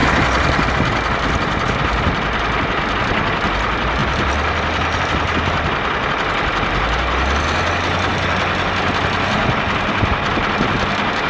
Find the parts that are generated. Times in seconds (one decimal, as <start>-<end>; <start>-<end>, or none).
0.0-0.7; 4.0-6.1